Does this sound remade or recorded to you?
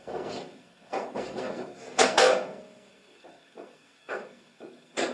remade